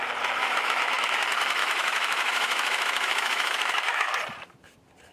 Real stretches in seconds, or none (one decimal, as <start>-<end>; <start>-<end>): 0.0-0.4; 1.2-1.6; 4.1-5.1